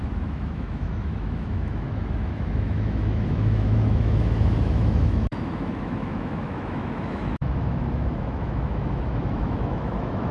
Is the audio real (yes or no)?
no